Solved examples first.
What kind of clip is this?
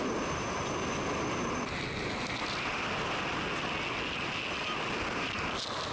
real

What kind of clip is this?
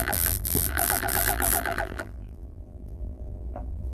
fake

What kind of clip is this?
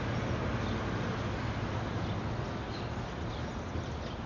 real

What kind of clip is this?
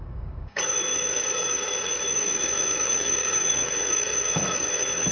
fake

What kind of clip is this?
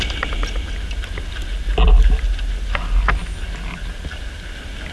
real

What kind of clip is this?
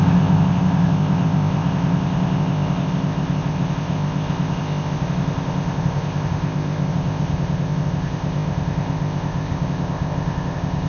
fake